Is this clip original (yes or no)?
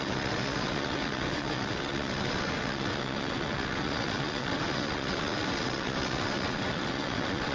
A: no